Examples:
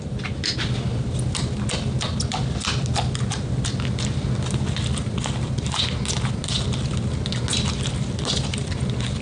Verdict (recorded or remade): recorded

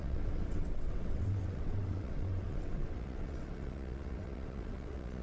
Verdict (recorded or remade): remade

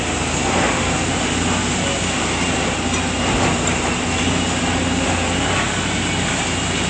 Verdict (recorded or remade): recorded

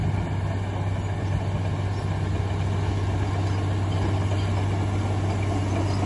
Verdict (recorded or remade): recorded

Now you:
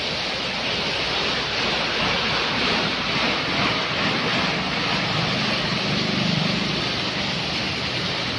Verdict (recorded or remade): remade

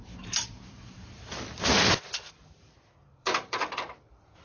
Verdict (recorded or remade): remade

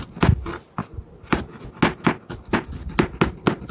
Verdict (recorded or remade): recorded